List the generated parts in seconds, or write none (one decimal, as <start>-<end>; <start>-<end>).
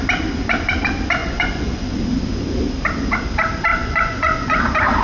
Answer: 1.2-2.0; 3.7-4.6